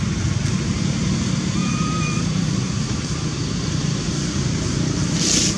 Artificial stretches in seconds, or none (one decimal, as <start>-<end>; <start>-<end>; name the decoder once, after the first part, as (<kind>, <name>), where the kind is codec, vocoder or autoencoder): 1.6-5.0 (vocoder, BigVGAN v2)